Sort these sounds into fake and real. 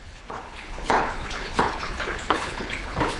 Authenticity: fake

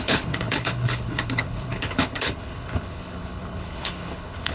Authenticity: fake